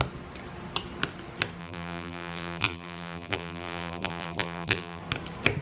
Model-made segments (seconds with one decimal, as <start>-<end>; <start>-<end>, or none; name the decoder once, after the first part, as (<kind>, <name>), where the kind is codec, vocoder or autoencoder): 1.6-5.0 (vocoder, BigVGAN v2)

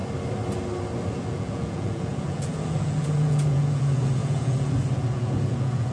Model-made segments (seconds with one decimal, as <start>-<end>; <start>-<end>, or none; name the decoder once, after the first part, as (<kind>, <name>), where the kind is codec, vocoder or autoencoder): 1.3-5.9 (vocoder, Vocos)

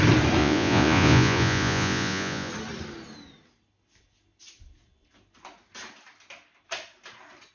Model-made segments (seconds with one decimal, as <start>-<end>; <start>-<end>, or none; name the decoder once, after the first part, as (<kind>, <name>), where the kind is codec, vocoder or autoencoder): 0.4-2.5 (vocoder, Vocos)